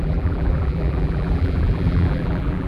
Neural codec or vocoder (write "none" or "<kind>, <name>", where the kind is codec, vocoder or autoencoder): vocoder, BigVGAN v2